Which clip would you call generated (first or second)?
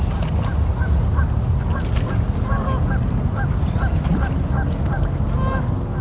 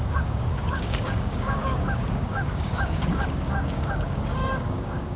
second